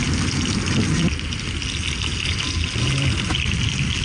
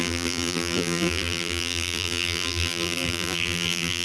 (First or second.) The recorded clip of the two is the first